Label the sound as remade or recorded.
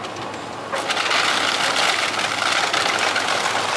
recorded